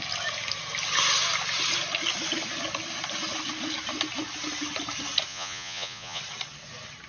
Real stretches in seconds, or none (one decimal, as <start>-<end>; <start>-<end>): 0.0-5.3; 6.2-7.1